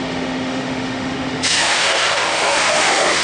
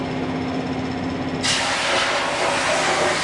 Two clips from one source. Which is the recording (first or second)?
second